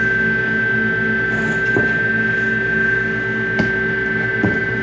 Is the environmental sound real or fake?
real